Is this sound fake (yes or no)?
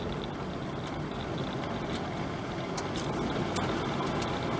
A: no